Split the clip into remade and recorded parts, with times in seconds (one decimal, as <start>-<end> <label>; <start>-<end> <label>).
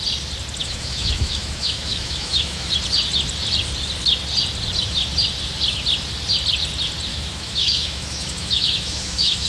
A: 0.0-0.6 recorded; 0.6-2.7 remade; 2.7-7.1 recorded; 7.1-9.5 remade